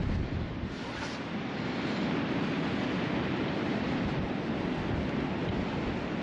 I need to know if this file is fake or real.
real